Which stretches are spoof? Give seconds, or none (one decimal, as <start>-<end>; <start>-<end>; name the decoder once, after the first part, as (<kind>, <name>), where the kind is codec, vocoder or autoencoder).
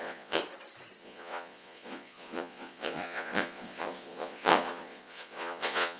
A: 0.0-0.4 (vocoder, Vocos); 1.0-6.0